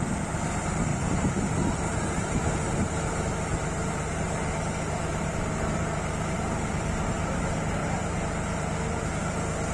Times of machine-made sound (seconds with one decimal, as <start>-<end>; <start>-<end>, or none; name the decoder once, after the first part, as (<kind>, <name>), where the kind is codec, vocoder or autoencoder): 0.9-2.4 (vocoder, BigVGAN v2); 3.5-4.4; 7.8-9.0